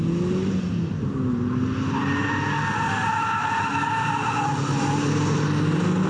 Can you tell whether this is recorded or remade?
recorded